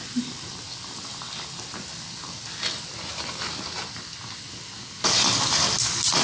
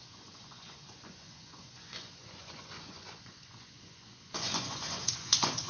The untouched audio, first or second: first